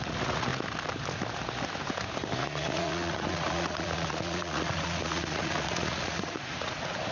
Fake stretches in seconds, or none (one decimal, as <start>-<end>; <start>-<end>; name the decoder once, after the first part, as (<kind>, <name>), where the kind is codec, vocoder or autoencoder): 0.0-0.5 (vocoder, Vocos); 2.4-7.1